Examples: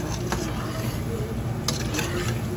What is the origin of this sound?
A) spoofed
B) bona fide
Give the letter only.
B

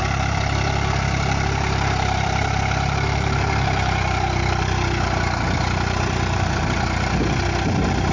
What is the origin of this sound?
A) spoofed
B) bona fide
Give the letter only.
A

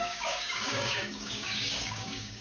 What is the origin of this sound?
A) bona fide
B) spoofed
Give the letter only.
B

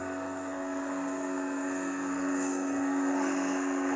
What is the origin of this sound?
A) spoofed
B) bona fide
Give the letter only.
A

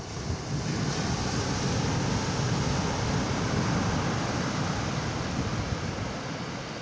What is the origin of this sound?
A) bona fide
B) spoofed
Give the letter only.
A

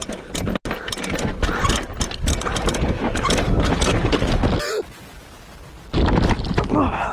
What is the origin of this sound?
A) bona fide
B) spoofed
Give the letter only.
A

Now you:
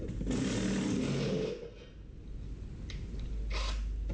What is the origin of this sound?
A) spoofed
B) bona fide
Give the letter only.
B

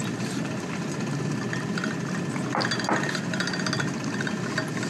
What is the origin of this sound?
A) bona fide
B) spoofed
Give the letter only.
A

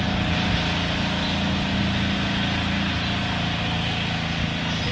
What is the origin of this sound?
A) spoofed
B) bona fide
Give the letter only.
B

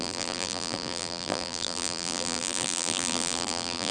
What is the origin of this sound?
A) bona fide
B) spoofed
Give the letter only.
B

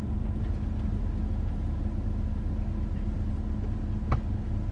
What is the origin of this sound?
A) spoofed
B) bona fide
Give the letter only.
B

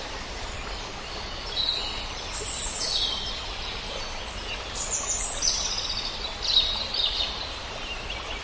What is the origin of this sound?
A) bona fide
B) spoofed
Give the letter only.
A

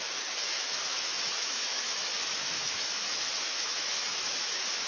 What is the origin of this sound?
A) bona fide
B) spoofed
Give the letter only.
B